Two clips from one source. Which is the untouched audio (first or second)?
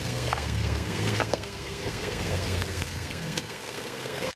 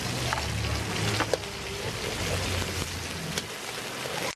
second